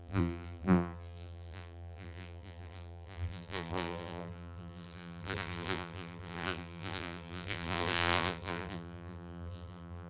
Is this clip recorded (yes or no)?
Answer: no